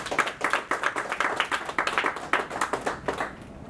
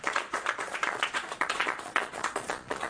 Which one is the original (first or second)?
first